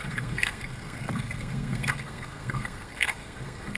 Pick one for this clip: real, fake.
fake